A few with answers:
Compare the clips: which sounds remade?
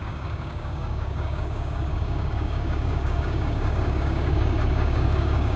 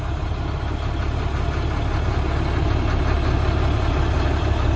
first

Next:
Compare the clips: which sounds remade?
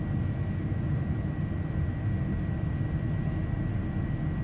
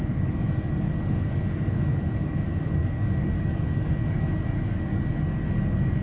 second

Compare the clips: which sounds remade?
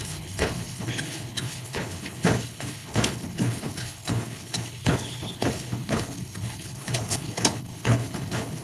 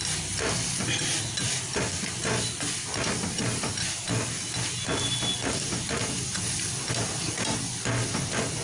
first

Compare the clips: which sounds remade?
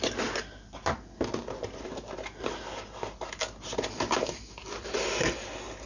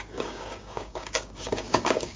second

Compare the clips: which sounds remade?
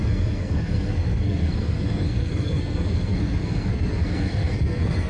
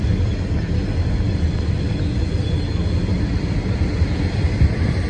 first